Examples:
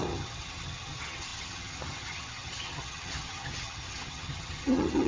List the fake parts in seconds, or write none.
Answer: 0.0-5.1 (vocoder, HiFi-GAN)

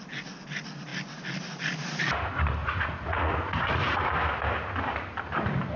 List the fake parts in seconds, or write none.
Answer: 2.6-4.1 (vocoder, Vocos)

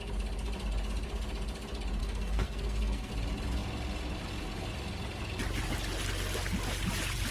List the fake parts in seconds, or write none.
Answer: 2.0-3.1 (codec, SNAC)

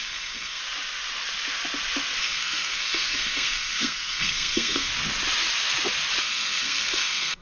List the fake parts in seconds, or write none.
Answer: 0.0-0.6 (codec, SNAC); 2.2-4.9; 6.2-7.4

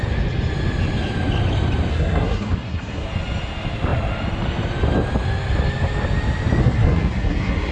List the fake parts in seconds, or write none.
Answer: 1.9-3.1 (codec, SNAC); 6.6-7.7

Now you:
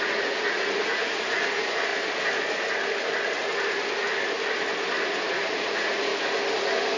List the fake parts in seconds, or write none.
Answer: 0.0-1.9 (vocoder, Vocos); 5.2-6.1

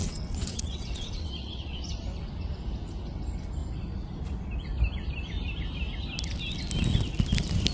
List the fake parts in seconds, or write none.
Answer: 0.0-1.8 (vocoder, WaveNeXt)